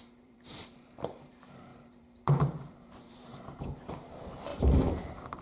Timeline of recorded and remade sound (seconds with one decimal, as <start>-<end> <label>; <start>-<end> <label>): 0.0-5.4 remade